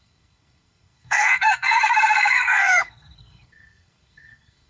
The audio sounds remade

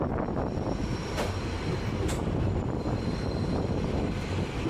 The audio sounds recorded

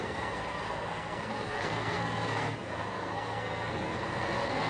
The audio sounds remade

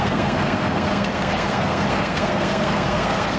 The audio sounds remade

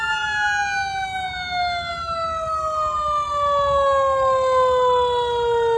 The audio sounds recorded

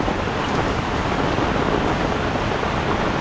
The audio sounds recorded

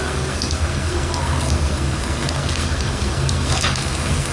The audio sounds remade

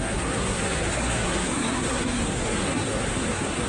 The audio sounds remade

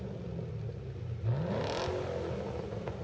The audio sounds recorded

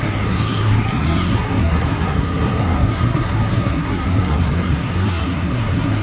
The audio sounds remade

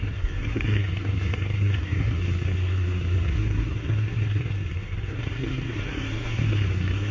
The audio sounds remade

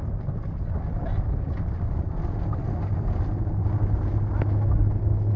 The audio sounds recorded